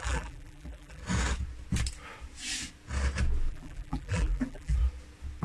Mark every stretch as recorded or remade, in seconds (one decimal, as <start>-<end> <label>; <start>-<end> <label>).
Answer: 0.0-1.0 remade; 1.0-3.5 recorded; 3.5-4.8 remade; 4.8-5.4 recorded